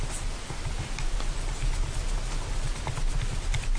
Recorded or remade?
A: recorded